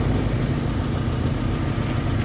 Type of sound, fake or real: real